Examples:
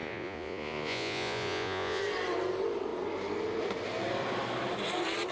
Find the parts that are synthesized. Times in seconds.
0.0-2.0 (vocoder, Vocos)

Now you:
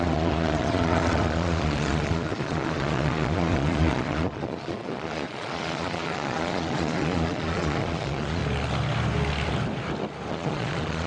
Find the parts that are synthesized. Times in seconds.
0.0-8.4 (vocoder, Vocos); 10.3-11.1

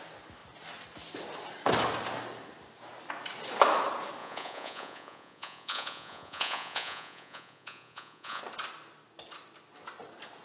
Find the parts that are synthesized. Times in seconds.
4.2-8.4 (vocoder, Vocos)